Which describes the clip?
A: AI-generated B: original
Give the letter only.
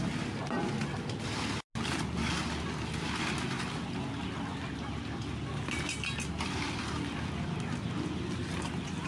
B